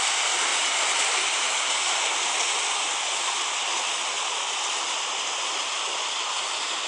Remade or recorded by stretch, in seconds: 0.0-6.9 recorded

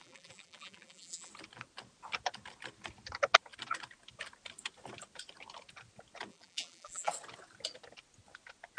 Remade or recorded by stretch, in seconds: 0.0-1.3 remade; 1.3-6.3 recorded; 6.3-7.1 remade; 7.1-8.8 recorded

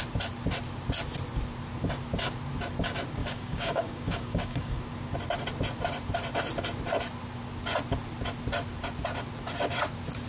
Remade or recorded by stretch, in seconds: 0.0-3.2 recorded; 3.2-4.8 remade; 4.8-10.3 recorded